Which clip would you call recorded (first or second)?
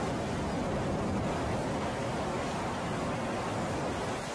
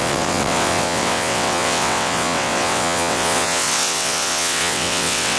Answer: first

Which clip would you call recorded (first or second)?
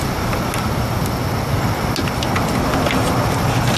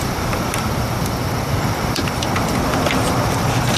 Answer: first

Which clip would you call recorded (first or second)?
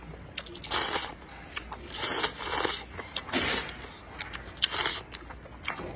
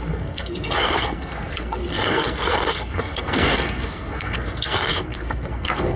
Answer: first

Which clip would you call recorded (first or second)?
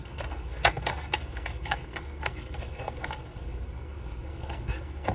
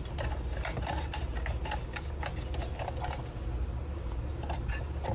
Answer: second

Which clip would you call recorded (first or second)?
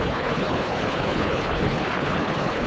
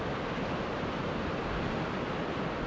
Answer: second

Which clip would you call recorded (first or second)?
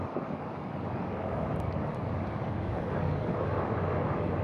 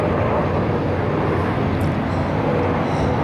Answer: second